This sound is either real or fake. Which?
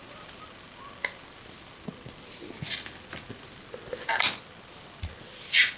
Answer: real